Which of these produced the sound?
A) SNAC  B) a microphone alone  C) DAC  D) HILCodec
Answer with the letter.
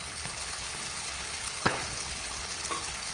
D